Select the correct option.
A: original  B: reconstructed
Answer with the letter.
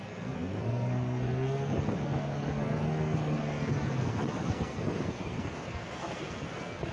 B